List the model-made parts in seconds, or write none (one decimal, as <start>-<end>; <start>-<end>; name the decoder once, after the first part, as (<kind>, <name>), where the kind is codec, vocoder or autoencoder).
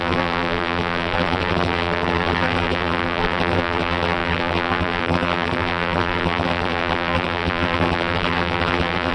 0.0-9.1 (vocoder, BigVGAN v2)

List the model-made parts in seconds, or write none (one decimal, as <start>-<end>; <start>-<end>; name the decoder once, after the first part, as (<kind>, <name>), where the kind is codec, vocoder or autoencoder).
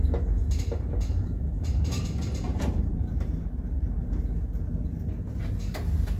0.4-2.0 (vocoder, BigVGAN v2); 2.5-4.2